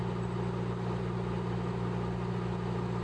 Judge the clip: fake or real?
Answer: real